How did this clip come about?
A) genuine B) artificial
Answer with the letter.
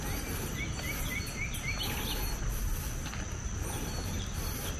A